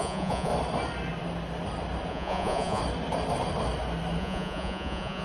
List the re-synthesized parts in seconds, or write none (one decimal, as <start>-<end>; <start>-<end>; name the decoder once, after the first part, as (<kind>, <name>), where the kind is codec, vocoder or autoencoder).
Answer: 0.0-0.5 (vocoder, Vocos); 2.1-2.8; 4.2-5.2